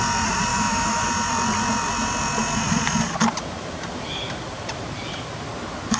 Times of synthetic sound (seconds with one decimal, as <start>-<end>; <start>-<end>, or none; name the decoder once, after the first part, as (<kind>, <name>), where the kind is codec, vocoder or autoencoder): 0.5-1.1 (autoencoder, DAC-VAE)